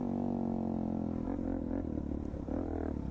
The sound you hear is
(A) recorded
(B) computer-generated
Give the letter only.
A